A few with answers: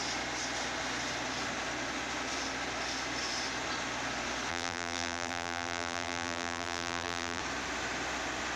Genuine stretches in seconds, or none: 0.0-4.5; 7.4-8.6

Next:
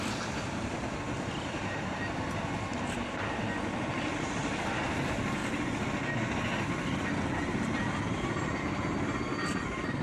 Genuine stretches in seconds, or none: 0.0-10.0

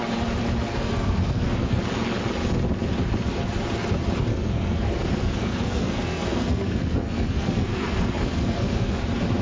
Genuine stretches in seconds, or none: 0.0-0.7; 1.8-4.3; 9.0-9.4